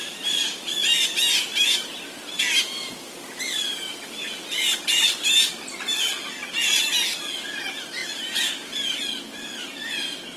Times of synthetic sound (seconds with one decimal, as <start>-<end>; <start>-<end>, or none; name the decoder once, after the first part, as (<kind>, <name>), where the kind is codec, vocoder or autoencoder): none